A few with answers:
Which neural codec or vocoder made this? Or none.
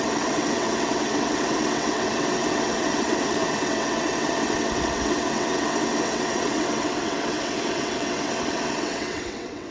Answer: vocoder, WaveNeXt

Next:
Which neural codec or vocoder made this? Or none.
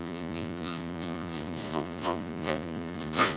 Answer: vocoder, Vocos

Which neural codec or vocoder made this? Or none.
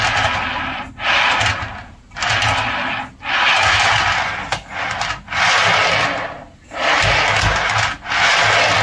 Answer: none